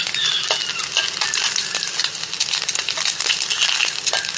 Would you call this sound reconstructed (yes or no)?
no